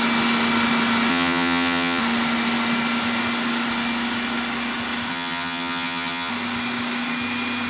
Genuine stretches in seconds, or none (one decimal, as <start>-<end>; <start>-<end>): 0.0-1.1; 2.0-5.1; 6.3-7.7